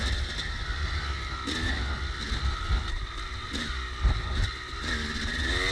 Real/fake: real